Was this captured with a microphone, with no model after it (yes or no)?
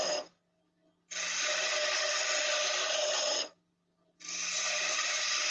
yes